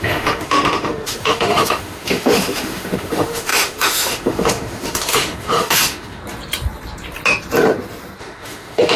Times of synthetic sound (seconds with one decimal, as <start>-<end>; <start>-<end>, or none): 0.0-6.2; 8.2-9.0